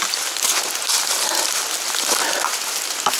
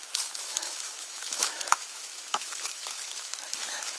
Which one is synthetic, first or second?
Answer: second